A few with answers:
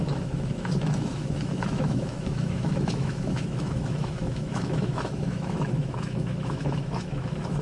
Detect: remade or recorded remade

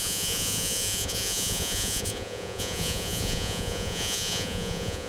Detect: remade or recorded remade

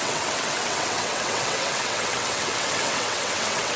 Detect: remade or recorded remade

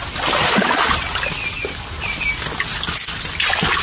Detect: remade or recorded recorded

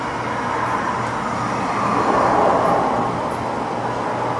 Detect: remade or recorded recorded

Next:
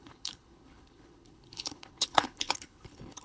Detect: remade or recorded remade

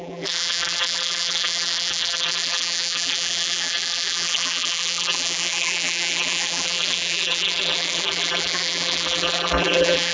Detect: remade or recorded remade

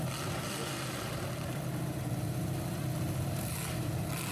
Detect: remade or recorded remade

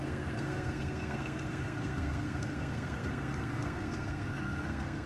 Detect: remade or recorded remade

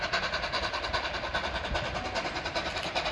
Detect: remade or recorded recorded